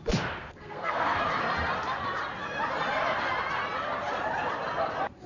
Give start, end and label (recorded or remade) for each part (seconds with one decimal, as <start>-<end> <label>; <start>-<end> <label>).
0.0-0.4 recorded; 0.4-1.2 remade; 1.2-5.3 recorded